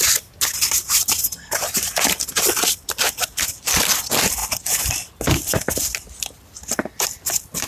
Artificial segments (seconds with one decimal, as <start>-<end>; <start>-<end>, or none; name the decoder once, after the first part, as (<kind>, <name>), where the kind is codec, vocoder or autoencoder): none